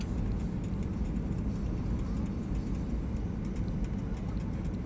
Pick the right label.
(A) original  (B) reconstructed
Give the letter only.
A